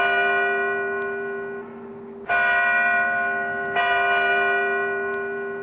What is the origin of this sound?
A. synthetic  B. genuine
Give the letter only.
B